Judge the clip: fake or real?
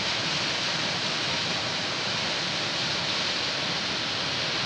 real